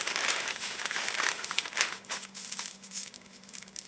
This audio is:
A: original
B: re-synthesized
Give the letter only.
B